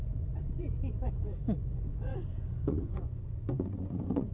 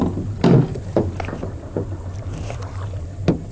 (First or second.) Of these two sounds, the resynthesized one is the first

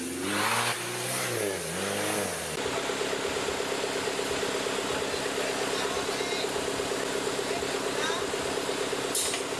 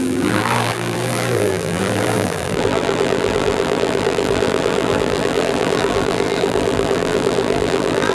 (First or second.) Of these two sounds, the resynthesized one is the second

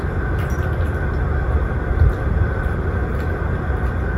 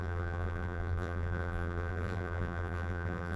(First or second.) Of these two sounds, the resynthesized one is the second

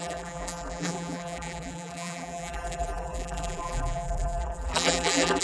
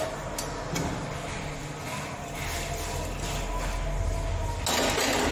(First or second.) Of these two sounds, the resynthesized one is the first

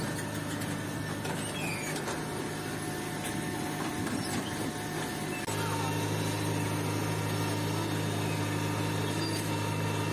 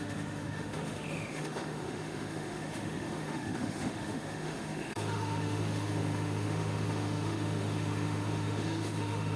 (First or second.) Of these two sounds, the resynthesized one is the second